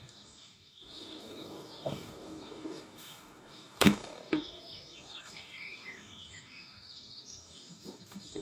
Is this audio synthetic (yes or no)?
yes